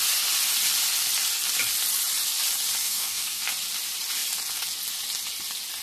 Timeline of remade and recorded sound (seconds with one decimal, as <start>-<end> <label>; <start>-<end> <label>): 0.0-2.8 recorded; 2.8-3.4 remade; 3.4-5.8 recorded